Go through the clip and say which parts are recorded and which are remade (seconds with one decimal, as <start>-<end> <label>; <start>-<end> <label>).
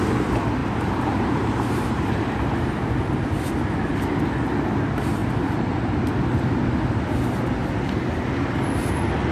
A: 0.0-0.6 recorded; 0.6-2.9 remade; 2.9-9.3 recorded